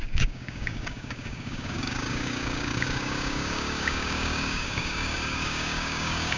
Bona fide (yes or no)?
no